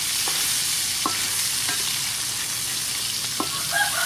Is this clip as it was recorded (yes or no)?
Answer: yes